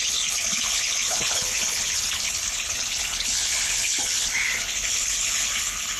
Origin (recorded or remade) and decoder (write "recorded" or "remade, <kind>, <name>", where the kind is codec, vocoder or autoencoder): remade, codec, HILCodec